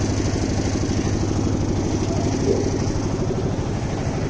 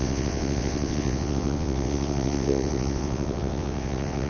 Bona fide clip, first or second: first